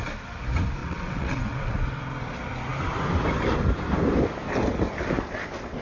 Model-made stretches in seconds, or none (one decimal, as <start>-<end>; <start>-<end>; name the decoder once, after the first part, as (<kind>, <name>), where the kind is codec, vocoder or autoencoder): 0.8-1.7 (vocoder, WaveNeXt)